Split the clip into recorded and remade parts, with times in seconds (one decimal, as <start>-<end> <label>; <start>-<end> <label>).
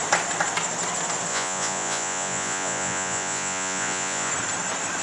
0.0-1.3 recorded; 1.3-4.3 remade; 4.3-5.0 recorded